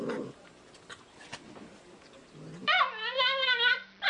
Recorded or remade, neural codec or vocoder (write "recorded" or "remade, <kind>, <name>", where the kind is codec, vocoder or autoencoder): recorded